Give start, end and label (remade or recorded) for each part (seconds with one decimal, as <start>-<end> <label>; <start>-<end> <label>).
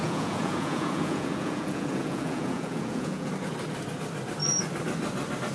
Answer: 0.0-3.3 remade; 3.3-5.5 recorded